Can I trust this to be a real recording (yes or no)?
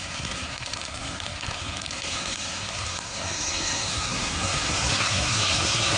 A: no